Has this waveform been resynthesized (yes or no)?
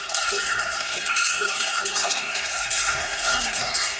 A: yes